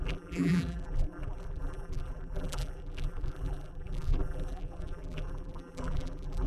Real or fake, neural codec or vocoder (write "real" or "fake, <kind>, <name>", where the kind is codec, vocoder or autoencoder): fake, vocoder, BigVGAN v2